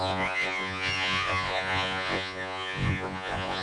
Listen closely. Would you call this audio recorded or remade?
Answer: remade